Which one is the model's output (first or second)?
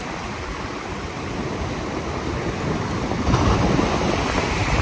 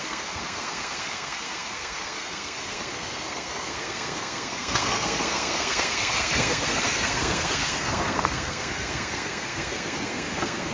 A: second